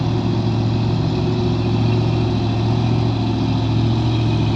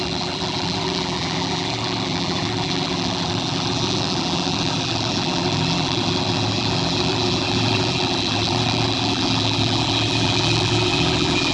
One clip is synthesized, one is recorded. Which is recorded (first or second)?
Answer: first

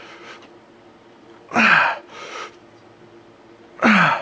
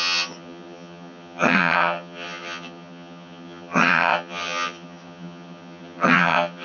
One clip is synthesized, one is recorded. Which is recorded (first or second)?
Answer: first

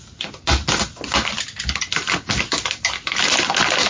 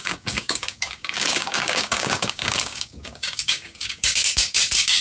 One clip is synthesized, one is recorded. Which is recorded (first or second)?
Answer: first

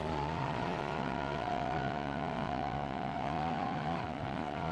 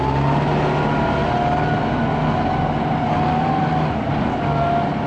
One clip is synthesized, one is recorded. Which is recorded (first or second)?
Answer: second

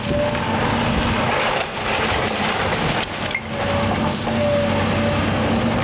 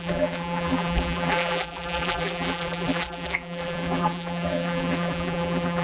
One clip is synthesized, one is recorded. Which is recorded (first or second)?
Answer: first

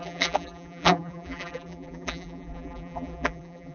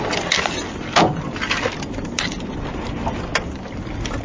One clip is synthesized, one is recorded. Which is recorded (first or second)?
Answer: second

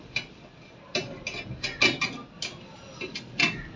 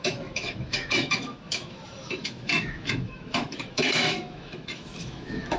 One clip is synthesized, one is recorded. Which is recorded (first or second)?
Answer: first